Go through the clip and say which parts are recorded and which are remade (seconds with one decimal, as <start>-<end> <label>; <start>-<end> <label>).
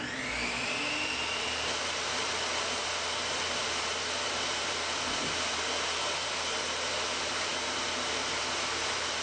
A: 0.0-5.9 remade; 5.9-6.9 recorded; 6.9-9.2 remade